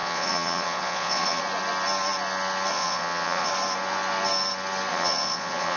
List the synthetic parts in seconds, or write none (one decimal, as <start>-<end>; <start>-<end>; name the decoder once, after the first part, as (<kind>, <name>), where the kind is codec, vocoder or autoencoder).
0.0-1.4 (vocoder, Vocos); 2.7-3.5; 4.9-5.8